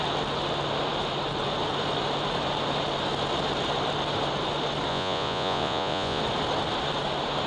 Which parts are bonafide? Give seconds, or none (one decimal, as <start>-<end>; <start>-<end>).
0.0-4.9; 6.2-7.5